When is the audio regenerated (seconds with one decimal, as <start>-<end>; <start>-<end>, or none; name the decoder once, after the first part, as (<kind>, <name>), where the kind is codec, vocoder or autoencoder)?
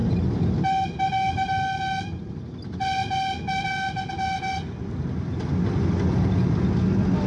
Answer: none